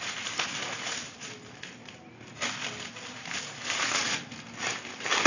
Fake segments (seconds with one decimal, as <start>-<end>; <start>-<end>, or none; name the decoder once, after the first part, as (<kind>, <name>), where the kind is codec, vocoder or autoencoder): 0.0-1.8 (vocoder, BigVGAN v2); 3.0-4.1